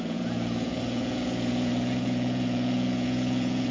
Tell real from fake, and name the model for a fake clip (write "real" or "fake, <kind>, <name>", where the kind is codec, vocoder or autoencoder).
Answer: fake, vocoder, Vocos